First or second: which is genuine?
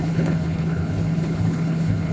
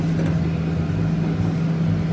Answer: second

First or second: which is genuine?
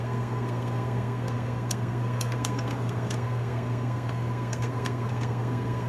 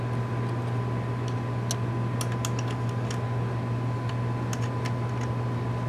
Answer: second